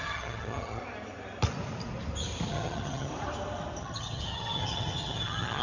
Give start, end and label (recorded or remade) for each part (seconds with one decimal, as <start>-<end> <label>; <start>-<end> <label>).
0.0-0.8 remade; 0.8-2.5 recorded; 2.5-3.1 remade; 3.1-3.8 recorded; 3.8-5.6 remade